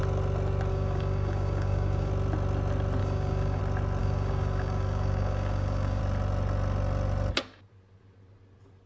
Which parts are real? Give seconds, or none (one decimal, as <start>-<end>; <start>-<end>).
0.0-0.7; 2.1-3.0; 3.6-4.0; 6.0-8.9